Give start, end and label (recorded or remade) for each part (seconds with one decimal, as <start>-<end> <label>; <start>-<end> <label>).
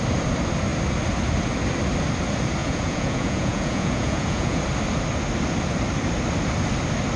0.0-2.6 recorded; 2.6-4.6 remade; 4.6-7.2 recorded